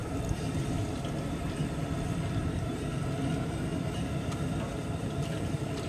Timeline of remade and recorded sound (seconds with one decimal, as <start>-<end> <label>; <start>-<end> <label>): 0.0-2.7 remade; 2.7-3.7 recorded; 3.7-5.9 remade